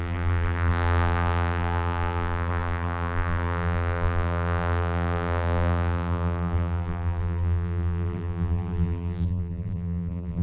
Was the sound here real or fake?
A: fake